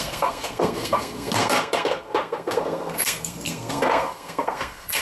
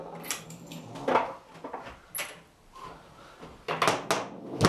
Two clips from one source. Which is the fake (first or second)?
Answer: first